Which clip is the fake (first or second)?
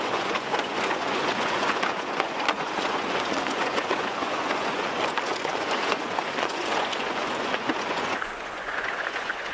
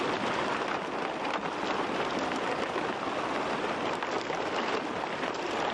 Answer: first